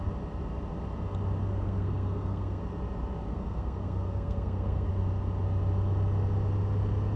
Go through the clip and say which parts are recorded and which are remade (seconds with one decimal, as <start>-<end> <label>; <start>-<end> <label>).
0.0-1.5 recorded; 1.5-2.6 remade; 2.6-3.3 recorded; 3.3-4.9 remade; 4.9-7.2 recorded